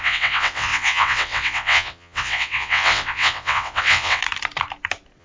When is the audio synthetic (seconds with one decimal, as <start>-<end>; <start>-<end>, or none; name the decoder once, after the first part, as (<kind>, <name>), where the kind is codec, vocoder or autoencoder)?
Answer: 0.0-4.2 (vocoder, WaveNeXt)